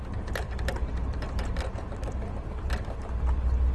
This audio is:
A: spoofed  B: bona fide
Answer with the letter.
B